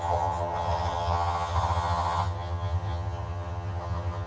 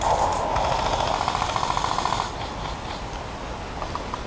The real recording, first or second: second